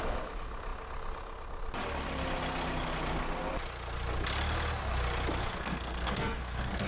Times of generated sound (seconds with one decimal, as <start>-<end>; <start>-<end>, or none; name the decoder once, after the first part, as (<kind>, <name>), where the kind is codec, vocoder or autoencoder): 5.4-6.9 (codec, SNAC)